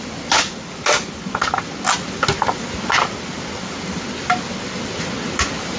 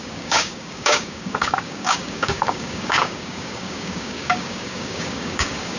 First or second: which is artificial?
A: second